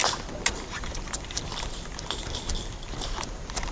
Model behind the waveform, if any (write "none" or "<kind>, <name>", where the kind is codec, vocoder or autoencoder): none